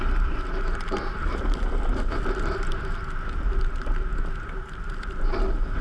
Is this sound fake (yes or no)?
no